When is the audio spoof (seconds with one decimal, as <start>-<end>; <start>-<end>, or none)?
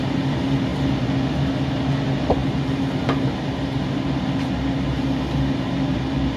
none